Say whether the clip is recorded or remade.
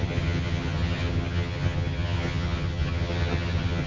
remade